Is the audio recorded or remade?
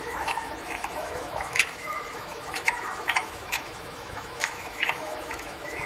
remade